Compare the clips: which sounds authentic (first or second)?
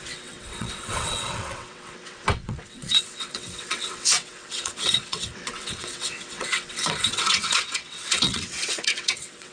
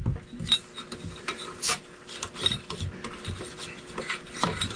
second